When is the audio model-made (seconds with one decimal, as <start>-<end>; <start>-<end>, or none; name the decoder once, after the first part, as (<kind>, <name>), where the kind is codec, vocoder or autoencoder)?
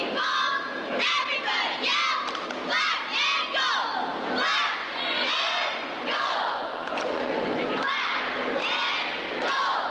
4.8-8.2 (vocoder, Vocos)